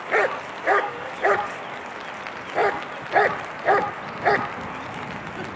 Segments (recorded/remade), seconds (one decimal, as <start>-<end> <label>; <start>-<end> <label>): 0.0-0.7 recorded; 0.7-1.3 remade; 1.3-5.6 recorded